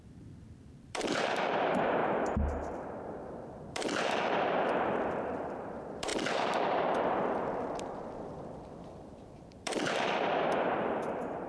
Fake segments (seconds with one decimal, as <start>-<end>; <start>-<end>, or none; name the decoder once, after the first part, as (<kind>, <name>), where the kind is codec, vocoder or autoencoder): 0.0-2.0 (vocoder, BigVGAN v2); 2.8-11.5